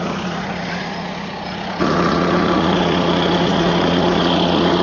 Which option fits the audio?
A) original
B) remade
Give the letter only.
B